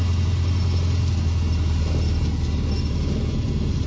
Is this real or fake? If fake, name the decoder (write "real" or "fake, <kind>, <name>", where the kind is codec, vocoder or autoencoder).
real